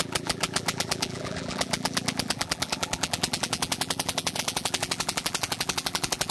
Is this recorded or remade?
remade